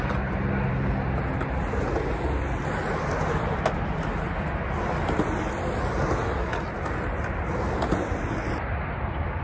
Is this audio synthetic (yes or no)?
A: no